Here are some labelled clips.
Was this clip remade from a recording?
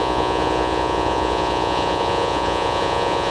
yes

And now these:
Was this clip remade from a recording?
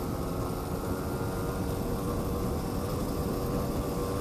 no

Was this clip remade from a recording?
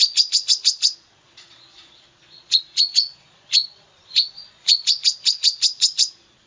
yes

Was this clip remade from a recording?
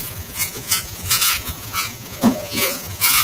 yes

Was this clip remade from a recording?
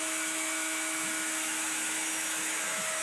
yes